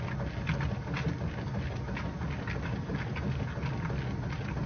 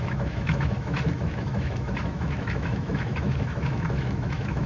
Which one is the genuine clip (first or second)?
first